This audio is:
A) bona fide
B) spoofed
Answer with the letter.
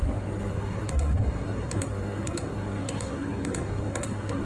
B